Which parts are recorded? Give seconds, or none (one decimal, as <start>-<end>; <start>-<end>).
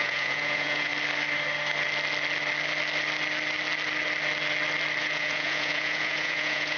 0.9-5.0